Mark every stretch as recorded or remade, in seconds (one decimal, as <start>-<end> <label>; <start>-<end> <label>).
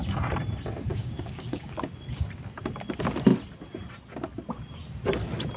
0.0-0.9 recorded; 0.9-1.7 remade; 1.7-5.6 recorded